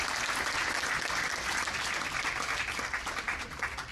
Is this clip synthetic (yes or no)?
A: no